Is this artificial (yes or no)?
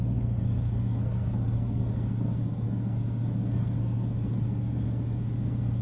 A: yes